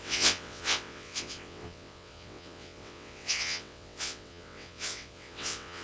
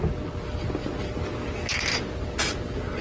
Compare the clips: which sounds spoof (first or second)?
first